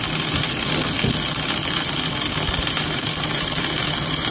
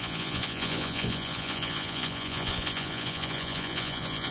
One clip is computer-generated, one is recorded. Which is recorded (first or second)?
first